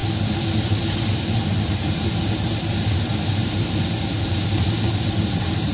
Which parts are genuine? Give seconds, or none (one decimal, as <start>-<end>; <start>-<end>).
0.0-1.2